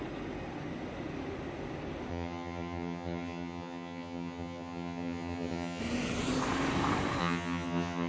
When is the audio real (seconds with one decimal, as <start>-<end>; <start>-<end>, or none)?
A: 0.0-2.1; 5.8-7.2